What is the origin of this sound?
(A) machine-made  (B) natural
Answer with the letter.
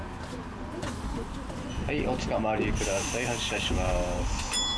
B